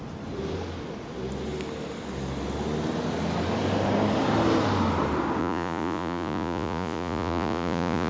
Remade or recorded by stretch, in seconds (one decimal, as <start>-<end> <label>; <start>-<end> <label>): 0.0-5.4 recorded; 5.4-8.1 remade